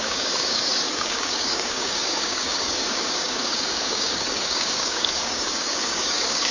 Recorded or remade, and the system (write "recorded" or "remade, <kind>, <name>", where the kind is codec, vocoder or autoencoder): remade, codec, DAC